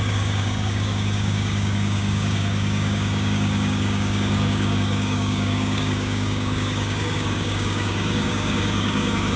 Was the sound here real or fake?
fake